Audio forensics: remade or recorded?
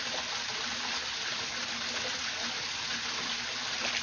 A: recorded